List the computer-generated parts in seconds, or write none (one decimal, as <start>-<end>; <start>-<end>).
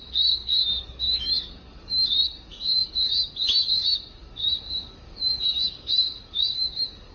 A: 0.0-7.1